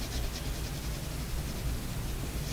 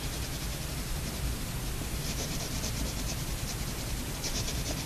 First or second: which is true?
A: first